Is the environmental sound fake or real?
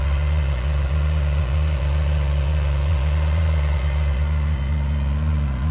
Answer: fake